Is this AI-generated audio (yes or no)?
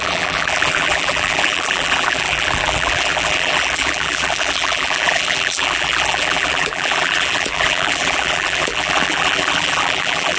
yes